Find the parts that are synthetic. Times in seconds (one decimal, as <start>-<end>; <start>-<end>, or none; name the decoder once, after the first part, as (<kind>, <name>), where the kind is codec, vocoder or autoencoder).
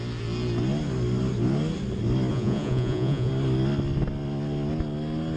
2.3-3.3 (vocoder, Vocos)